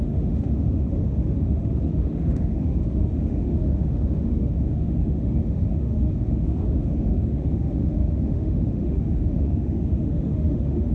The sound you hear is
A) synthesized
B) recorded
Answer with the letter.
A